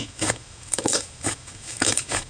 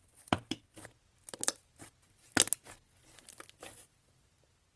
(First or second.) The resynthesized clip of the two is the first